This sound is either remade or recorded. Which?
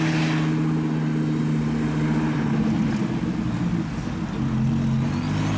recorded